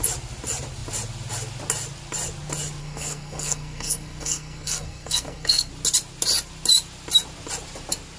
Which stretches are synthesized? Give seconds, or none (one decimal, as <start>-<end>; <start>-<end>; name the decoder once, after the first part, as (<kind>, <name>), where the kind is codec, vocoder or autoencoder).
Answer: 2.8-5.7 (codec, SNAC)